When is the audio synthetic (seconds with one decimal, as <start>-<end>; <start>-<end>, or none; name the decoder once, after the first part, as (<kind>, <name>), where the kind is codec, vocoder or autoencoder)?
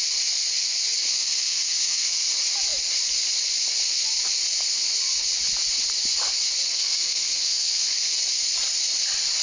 1.1-2.3 (codec, SNAC); 6.7-8.1